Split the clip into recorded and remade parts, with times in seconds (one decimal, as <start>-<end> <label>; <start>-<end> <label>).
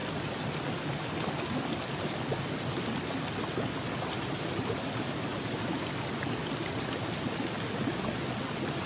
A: 0.0-8.9 recorded